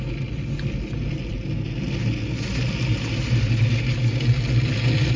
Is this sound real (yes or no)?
yes